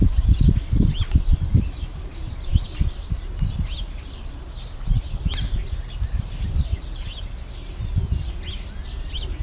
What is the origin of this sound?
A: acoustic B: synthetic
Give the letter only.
A